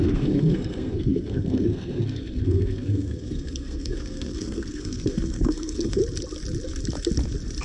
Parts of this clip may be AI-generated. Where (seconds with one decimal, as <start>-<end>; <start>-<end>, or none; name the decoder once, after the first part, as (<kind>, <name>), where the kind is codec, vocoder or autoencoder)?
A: 0.0-6.0 (codec, SNAC)